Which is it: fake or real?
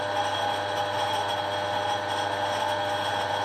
real